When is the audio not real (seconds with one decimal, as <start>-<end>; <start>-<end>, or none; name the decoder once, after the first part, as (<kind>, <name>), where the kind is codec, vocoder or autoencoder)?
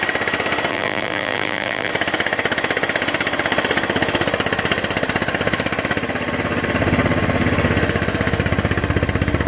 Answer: 0.7-1.9 (vocoder, BigVGAN v2)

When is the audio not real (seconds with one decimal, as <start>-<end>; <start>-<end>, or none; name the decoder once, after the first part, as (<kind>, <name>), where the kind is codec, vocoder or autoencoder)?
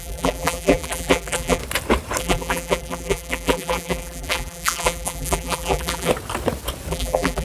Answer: 0.0-1.6 (vocoder, BigVGAN v2); 2.2-6.1; 6.9-7.4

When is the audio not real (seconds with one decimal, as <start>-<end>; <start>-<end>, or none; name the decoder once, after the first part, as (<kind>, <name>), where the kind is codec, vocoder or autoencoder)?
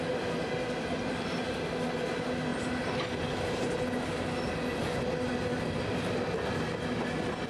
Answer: none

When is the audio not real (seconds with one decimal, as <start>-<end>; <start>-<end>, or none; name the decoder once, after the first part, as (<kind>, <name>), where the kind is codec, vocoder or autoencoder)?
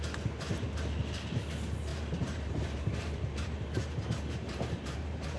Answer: 1.9-5.4 (vocoder, BigVGAN v2)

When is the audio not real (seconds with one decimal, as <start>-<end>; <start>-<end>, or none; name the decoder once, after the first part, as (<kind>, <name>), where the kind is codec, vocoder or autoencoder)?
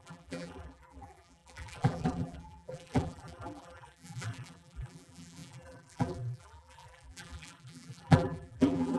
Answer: 0.0-9.0 (vocoder, BigVGAN v2)